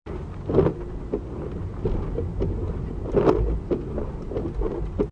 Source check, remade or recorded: recorded